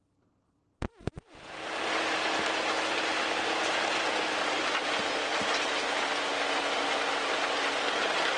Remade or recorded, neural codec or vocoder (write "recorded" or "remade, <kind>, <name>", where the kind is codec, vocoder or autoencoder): recorded